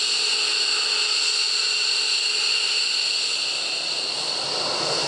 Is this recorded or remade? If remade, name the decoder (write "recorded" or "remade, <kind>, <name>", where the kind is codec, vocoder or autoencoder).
recorded